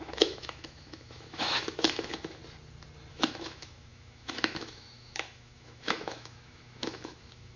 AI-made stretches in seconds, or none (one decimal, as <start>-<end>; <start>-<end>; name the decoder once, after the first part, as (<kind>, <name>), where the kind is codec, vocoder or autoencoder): 0.0-2.4 (autoencoder, DAC-VAE); 3.1-7.6